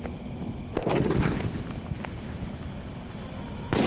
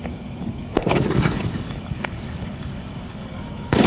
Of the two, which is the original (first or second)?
first